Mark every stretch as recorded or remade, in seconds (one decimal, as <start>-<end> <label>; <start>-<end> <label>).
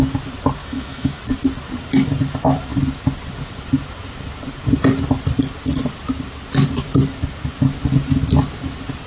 0.0-0.6 recorded; 0.6-1.2 remade; 1.2-9.1 recorded